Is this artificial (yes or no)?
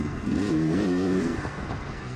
yes